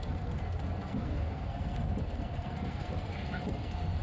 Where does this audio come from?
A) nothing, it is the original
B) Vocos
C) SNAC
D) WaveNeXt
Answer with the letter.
C